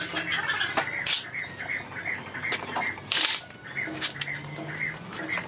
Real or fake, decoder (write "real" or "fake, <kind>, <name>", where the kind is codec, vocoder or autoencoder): real